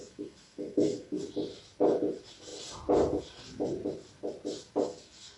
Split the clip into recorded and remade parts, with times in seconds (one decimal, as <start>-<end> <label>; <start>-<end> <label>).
0.0-1.2 remade; 1.2-4.8 recorded; 4.8-5.4 remade